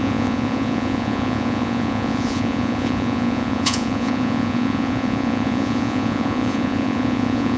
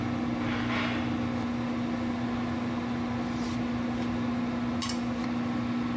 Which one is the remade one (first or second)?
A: first